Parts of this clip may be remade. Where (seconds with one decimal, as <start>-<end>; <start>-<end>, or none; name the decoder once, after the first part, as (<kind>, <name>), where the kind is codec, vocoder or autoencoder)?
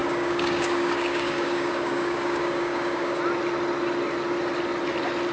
0.0-3.2 (codec, DAC)